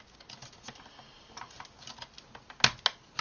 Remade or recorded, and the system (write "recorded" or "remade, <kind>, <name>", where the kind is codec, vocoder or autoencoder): recorded